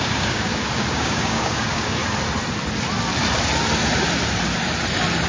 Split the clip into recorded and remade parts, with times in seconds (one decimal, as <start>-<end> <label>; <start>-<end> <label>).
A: 0.0-2.0 remade; 2.0-5.3 recorded